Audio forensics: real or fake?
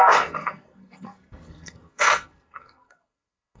fake